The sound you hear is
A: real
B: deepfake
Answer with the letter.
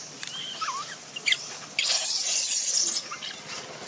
A